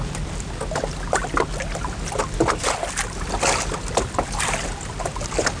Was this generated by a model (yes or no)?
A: no